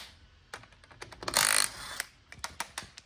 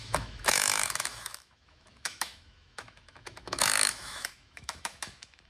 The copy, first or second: second